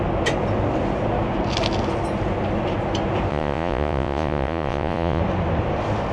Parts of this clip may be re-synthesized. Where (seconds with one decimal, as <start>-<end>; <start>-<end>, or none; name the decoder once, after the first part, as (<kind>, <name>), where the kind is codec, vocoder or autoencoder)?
3.3-5.2 (vocoder, Vocos)